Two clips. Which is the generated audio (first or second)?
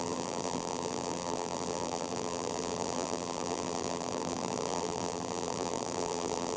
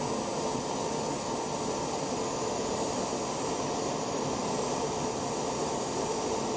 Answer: first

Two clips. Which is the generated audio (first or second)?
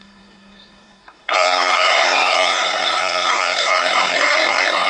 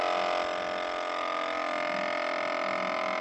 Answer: first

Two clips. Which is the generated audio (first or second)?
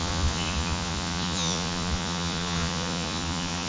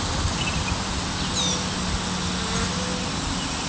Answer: first